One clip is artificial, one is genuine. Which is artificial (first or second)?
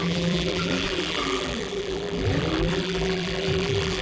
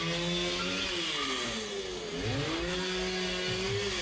first